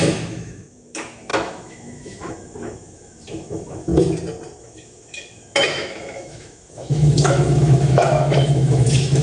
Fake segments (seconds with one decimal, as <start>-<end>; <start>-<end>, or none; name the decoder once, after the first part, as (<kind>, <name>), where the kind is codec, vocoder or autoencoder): 0.0-3.9 (autoencoder, DAC-VAE); 4.6-9.2

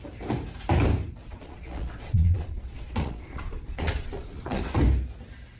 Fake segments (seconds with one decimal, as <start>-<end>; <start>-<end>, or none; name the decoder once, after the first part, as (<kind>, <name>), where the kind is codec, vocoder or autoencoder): 1.2-4.6 (vocoder, Vocos)

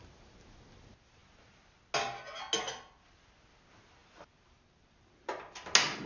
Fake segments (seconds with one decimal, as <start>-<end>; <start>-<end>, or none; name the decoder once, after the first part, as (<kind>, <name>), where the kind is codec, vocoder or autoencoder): none

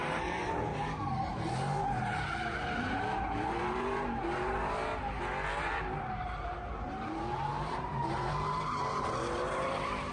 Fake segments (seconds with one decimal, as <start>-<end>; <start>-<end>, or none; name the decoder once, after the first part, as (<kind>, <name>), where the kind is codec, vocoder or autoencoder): 0.0-4.9 (vocoder, BigVGAN v2); 5.6-10.1

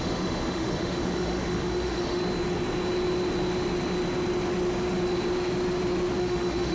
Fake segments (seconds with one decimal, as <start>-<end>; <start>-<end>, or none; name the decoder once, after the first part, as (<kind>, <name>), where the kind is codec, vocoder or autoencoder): 0.0-2.2 (autoencoder, DAC-VAE); 6.2-6.7

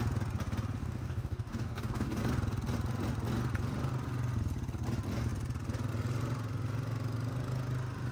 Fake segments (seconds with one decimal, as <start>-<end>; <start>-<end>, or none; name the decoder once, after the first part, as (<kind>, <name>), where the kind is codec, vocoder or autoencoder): 0.8-2.2 (codec, DAC)

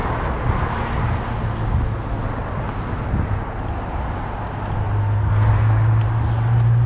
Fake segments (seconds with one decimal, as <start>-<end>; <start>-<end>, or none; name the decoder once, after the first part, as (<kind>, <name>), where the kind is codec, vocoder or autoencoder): 5.0-5.5 (codec, SNAC)